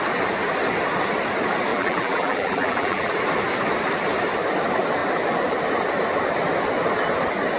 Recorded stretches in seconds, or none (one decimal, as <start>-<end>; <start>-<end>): 0.0-1.7; 3.1-7.6

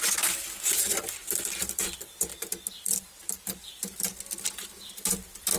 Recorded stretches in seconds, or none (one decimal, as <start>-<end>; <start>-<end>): 0.0-1.2; 4.1-5.6

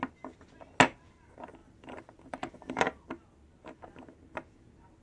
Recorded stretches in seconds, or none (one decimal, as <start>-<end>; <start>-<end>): 0.0-1.6; 3.1-5.0

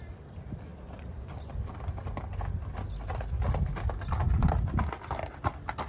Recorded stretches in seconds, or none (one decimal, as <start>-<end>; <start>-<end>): 0.0-5.9

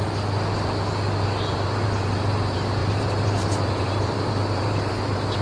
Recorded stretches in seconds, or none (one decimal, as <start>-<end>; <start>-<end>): 0.0-2.8; 4.9-5.4

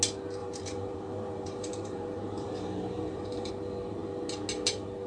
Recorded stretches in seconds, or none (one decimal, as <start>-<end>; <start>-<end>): 0.0-0.4; 3.5-5.1

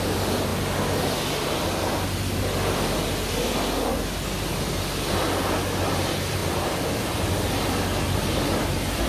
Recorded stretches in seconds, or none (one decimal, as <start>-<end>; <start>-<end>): 0.0-9.1

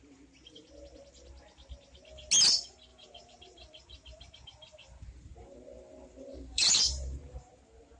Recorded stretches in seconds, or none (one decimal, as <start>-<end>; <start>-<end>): 0.0-2.9; 7.6-8.0